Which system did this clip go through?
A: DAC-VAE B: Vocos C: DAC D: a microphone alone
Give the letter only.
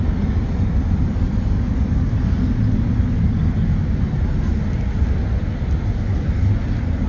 D